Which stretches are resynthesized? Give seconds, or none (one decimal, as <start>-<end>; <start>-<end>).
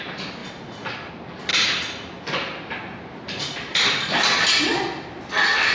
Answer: none